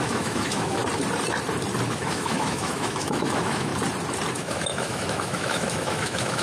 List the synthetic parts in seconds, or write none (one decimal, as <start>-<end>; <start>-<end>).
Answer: 0.0-0.8; 1.9-3.7; 4.3-6.4